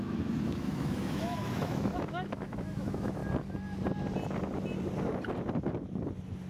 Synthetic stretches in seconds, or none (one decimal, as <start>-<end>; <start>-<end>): 0.0-3.2